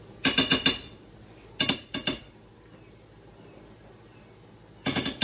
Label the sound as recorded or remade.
recorded